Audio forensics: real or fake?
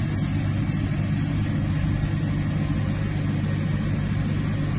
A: real